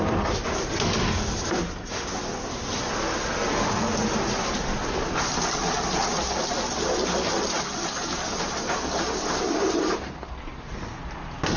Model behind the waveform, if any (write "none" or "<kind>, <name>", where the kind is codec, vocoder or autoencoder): none